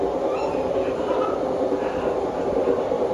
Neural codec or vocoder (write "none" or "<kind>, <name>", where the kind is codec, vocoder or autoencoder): none